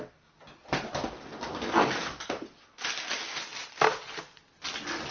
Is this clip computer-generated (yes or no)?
no